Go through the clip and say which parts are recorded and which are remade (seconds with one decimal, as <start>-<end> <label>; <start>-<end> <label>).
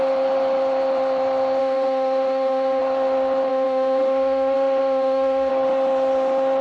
0.0-1.6 recorded; 1.6-2.8 remade; 2.8-3.5 recorded; 3.5-5.5 remade; 5.5-6.6 recorded